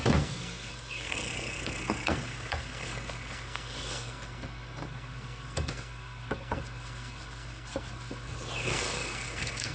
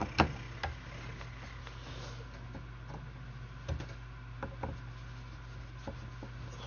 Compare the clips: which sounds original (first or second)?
second